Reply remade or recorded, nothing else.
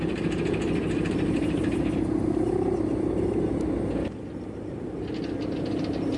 recorded